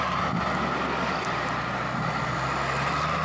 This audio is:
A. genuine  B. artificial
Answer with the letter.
A